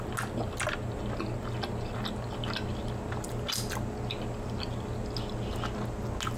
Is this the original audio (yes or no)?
yes